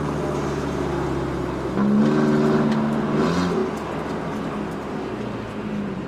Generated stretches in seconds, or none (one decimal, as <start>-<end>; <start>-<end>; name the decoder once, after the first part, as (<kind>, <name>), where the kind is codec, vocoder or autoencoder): none